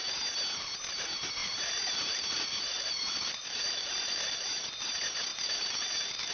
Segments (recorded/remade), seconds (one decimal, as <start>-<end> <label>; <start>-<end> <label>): 0.0-1.4 recorded; 1.4-4.6 remade; 4.6-5.3 recorded; 5.3-6.3 remade